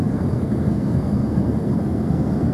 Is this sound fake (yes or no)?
yes